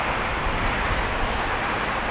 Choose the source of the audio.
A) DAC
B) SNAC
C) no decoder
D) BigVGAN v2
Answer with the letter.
C